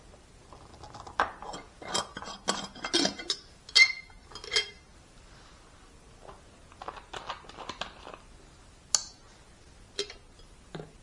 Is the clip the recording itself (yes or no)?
yes